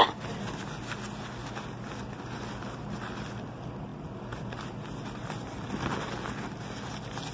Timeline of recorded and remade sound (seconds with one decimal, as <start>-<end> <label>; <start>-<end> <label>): 0.0-7.3 recorded